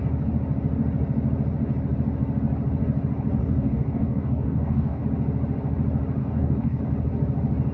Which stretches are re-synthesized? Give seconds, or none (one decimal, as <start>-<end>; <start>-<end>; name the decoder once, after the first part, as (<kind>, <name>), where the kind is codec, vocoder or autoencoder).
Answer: 3.4-5.0 (codec, DAC); 6.2-6.8